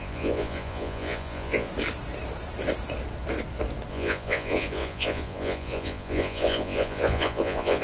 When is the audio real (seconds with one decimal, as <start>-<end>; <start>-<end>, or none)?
1.7-3.9